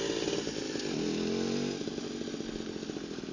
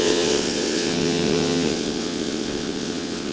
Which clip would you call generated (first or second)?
second